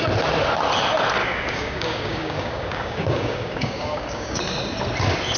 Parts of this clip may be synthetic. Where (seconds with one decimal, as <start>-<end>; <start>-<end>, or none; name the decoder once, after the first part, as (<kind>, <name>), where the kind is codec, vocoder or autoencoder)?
1.2-4.4 (codec, DAC)